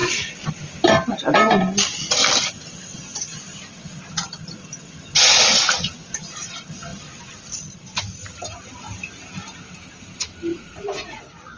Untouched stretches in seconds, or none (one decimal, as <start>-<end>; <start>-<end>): 0.5-10.5; 11.2-11.6